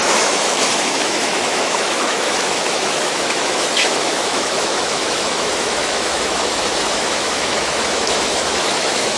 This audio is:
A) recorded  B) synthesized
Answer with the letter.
B